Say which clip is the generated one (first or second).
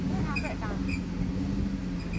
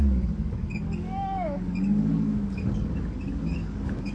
second